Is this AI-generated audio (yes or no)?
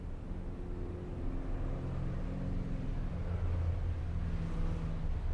no